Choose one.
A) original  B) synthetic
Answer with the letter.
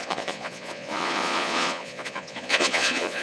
B